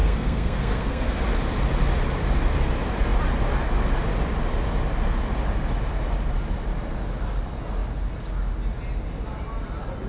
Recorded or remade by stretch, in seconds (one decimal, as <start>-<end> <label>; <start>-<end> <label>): 0.0-1.2 remade; 1.2-10.1 recorded